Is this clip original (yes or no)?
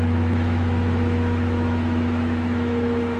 no